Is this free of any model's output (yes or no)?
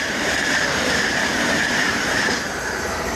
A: no